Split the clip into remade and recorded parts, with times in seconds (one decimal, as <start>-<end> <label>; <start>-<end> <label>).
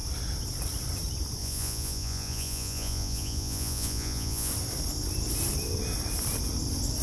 0.0-1.4 recorded; 1.4-4.5 remade; 4.5-7.0 recorded